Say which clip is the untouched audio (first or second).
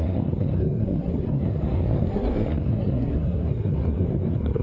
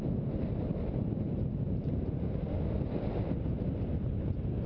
second